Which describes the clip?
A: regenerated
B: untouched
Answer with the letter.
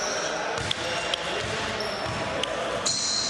B